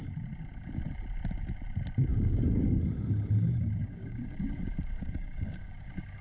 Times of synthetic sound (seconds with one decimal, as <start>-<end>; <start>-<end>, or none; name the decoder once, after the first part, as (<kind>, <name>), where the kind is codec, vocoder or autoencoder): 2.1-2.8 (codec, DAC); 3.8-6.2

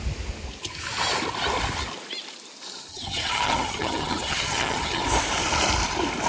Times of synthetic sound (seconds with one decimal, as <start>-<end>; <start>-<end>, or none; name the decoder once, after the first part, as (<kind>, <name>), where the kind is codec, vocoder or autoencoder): 2.9-5.0 (vocoder, HiFi-GAN)

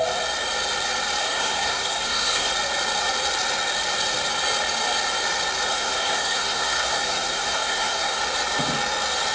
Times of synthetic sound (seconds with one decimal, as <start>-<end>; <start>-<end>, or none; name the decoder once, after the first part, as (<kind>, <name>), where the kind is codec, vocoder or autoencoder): 1.2-2.5 (codec, SNAC); 5.7-8.2